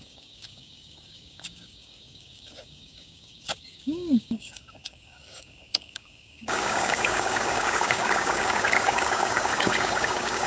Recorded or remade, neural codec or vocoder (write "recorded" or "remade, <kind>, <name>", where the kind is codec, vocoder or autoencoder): remade, codec, DAC